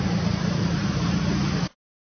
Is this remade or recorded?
recorded